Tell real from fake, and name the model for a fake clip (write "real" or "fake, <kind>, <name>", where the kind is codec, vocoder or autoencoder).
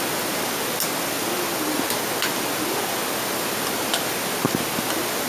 real